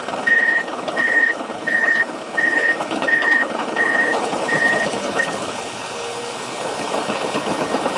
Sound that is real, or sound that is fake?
fake